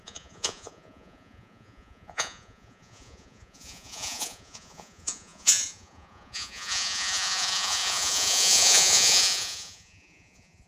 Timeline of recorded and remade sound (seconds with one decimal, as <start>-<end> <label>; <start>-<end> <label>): 0.0-10.7 remade